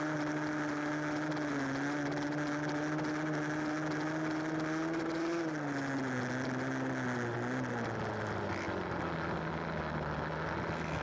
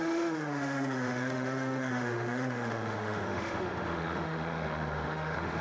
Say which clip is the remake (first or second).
second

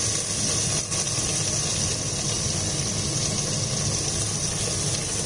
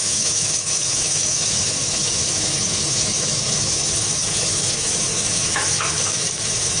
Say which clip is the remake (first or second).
second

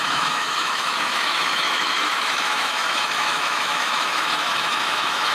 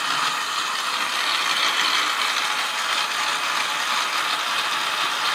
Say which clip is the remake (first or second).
first